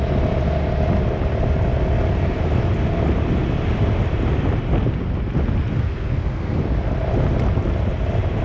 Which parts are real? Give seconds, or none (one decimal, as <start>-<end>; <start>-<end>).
0.0-5.7; 6.6-8.4